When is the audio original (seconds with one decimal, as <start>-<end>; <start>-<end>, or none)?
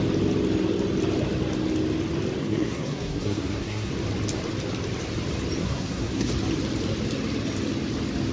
0.0-2.4; 3.9-5.6; 6.3-8.3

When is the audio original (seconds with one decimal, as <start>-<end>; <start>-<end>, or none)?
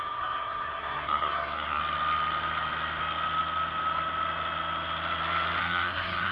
1.8-5.6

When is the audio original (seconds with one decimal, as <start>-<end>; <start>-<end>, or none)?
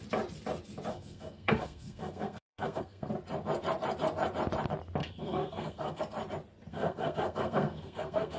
0.0-0.9; 3.1-5.0; 6.0-6.7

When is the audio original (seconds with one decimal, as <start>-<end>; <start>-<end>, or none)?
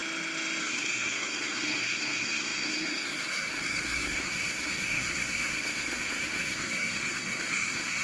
0.0-0.6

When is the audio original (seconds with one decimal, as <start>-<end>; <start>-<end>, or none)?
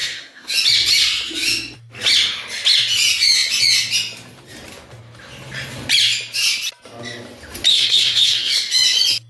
0.5-7.7; 8.5-9.3